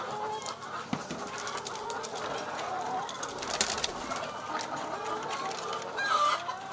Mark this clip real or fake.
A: real